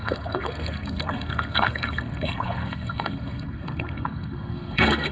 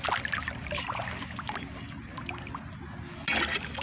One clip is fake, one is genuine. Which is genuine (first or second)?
second